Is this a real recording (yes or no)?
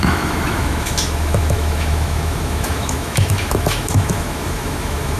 no